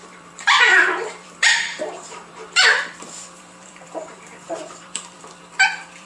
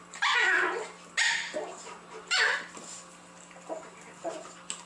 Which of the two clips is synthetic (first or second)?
first